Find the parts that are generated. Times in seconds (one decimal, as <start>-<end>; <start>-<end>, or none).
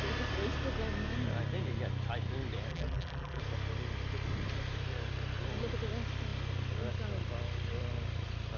2.7-3.4